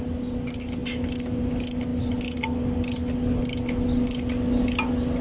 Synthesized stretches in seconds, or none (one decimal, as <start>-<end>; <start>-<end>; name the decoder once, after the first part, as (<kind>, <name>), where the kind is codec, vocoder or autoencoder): none